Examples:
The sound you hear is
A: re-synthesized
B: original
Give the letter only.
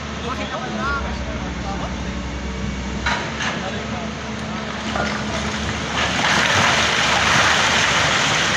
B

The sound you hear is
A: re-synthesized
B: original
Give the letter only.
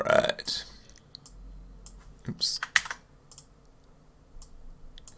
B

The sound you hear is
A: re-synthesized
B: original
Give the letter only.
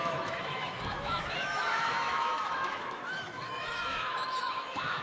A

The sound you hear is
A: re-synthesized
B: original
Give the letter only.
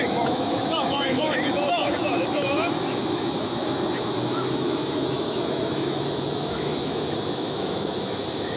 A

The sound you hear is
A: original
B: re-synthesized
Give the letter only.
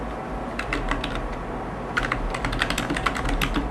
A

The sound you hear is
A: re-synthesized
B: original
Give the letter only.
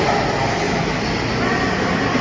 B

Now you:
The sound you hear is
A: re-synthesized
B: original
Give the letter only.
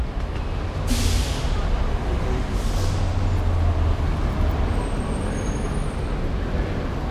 B